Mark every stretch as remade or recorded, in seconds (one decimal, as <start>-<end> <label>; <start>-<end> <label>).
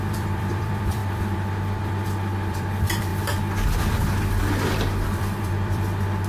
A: 0.0-3.1 remade; 3.1-5.1 recorded; 5.1-6.3 remade